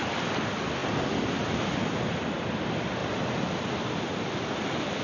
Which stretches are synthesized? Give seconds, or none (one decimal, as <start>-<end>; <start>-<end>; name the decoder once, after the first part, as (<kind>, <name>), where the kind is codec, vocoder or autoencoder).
0.0-0.8 (vocoder, BigVGAN v2); 2.5-3.0; 3.7-5.0